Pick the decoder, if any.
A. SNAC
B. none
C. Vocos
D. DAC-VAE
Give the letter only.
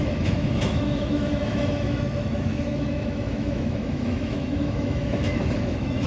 D